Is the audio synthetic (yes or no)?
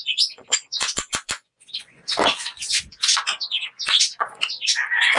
yes